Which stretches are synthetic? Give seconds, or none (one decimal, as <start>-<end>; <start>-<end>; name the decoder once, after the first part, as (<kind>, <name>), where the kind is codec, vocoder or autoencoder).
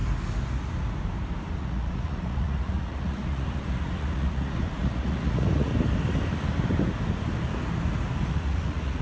1.6-5.7 (vocoder, Vocos); 8.3-9.0